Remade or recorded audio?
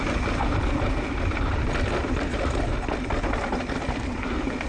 recorded